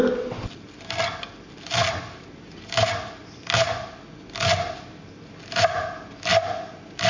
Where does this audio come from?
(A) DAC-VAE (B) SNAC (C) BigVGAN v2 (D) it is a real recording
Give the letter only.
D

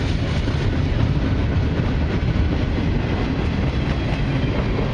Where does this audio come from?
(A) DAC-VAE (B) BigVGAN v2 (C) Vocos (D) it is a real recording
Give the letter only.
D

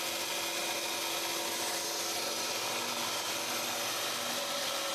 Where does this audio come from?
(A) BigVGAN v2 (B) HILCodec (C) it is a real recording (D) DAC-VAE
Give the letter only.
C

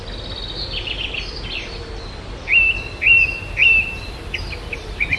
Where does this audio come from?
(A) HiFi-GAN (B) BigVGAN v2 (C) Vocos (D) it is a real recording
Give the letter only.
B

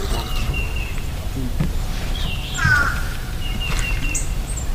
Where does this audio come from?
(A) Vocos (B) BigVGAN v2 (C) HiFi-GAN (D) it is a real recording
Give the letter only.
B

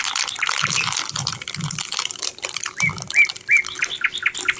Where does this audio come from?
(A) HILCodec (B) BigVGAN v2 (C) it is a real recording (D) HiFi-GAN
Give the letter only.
C